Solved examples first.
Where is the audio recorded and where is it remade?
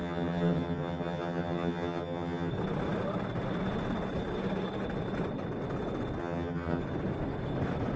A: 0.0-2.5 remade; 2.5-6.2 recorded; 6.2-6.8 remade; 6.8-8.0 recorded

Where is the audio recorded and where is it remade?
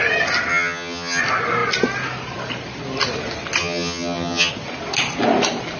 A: 0.0-0.5 recorded; 0.5-1.2 remade; 1.2-3.6 recorded; 3.6-4.5 remade; 4.5-5.8 recorded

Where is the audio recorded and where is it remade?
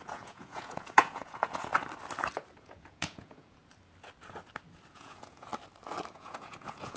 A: 0.0-1.7 remade; 1.7-2.6 recorded; 2.6-3.6 remade; 3.6-4.9 recorded; 4.9-5.5 remade; 5.5-6.1 recorded; 6.1-7.0 remade